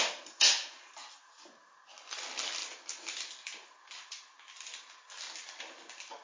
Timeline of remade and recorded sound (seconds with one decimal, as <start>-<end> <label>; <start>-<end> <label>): 0.0-6.2 recorded